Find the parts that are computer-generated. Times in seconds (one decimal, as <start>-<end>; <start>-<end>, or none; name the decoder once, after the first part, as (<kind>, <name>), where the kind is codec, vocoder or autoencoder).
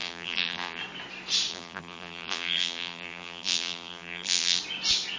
0.0-0.8 (vocoder, BigVGAN v2); 1.5-4.6